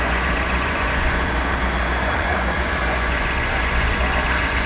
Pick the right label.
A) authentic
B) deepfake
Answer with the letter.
B